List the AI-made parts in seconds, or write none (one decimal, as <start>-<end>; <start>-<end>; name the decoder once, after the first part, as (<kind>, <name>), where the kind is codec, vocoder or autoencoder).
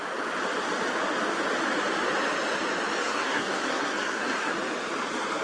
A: 3.0-4.5 (codec, SNAC)